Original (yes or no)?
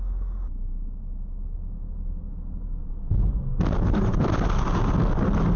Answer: yes